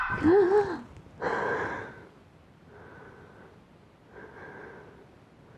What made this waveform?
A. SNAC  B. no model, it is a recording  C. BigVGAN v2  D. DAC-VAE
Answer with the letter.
B